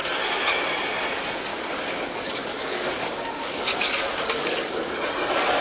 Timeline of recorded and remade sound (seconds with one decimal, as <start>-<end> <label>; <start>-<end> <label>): 0.0-1.5 recorded; 1.5-4.9 remade; 4.9-5.6 recorded